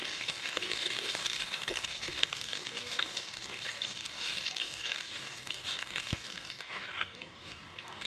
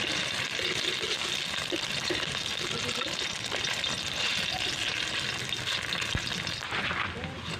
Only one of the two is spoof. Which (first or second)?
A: first